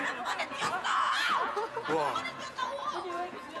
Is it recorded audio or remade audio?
remade